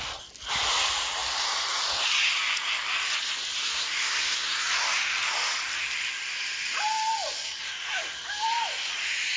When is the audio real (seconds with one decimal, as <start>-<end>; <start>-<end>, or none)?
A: 0.0-3.6; 4.6-9.4